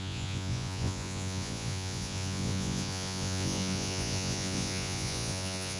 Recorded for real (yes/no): no